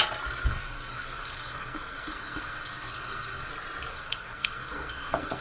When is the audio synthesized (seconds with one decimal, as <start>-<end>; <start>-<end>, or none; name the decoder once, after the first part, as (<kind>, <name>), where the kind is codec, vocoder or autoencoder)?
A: 0.5-3.5 (codec, SNAC); 3.9-5.4